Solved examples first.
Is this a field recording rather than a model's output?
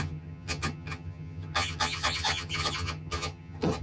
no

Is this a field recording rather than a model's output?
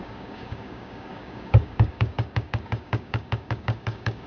no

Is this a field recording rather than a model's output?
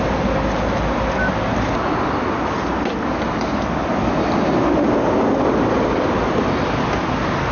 yes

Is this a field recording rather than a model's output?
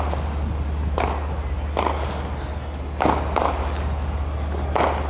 yes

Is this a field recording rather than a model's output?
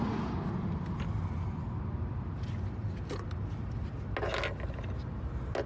yes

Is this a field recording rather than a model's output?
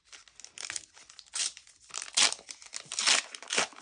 yes